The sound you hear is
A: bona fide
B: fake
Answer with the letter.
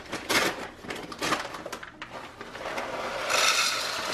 A